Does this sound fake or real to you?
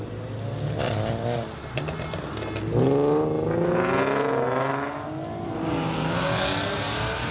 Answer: real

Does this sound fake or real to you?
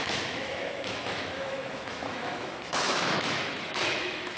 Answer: fake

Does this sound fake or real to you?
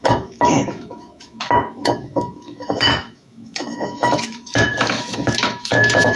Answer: fake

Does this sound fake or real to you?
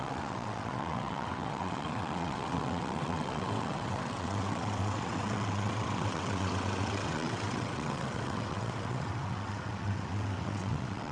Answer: fake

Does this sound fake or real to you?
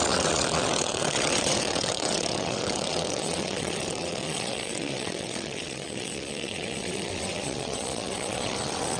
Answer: fake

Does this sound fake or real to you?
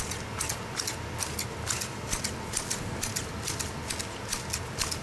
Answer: real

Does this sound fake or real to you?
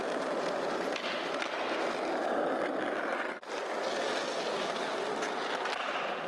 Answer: real